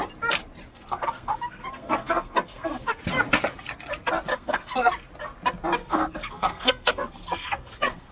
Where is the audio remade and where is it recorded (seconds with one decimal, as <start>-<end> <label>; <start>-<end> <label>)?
0.0-0.7 recorded; 0.7-3.0 remade; 3.0-4.3 recorded; 4.3-4.9 remade; 4.9-5.8 recorded; 5.8-8.1 remade